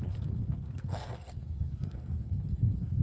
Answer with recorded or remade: remade